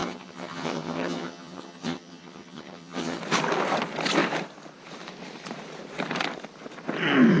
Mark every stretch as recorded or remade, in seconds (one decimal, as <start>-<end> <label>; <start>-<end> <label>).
0.0-3.2 remade; 3.2-7.4 recorded

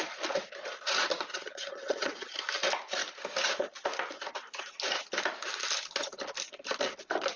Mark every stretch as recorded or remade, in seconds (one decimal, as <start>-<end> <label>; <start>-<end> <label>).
0.0-1.3 recorded; 1.3-2.3 remade; 2.3-7.4 recorded

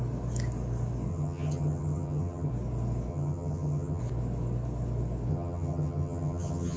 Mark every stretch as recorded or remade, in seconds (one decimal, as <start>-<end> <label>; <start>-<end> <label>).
0.0-1.1 recorded; 1.1-2.5 remade; 2.5-3.1 recorded; 3.1-4.0 remade; 4.0-5.3 recorded; 5.3-6.8 remade

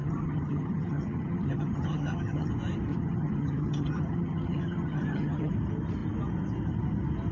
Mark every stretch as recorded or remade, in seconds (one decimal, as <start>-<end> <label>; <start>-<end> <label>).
0.0-2.5 remade; 2.5-2.9 recorded; 2.9-5.5 remade; 5.5-7.3 recorded

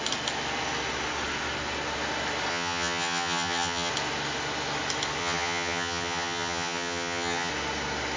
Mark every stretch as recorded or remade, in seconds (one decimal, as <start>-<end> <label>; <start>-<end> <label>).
0.0-2.5 recorded; 2.5-3.9 remade; 3.9-5.2 recorded; 5.2-7.5 remade; 7.5-8.2 recorded